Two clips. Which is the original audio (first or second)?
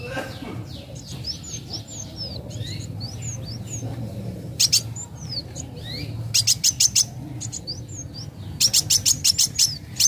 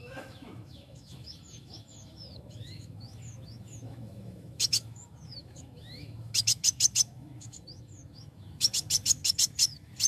first